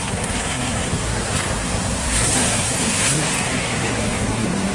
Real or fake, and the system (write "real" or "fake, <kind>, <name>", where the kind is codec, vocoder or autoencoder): fake, codec, SNAC